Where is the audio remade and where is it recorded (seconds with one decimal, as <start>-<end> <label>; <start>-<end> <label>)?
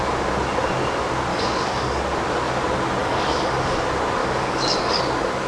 0.0-1.3 recorded; 1.3-2.0 remade; 2.0-3.0 recorded; 3.0-3.8 remade; 3.8-4.2 recorded; 4.2-5.0 remade; 5.0-5.5 recorded